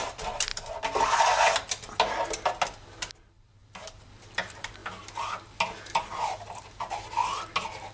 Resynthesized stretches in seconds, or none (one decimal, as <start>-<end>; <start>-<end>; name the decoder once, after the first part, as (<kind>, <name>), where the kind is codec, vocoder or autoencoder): none